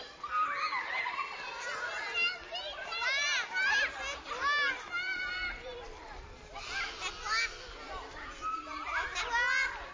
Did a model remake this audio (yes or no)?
no